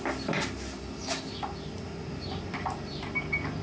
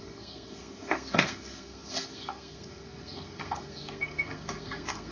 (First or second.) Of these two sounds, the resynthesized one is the second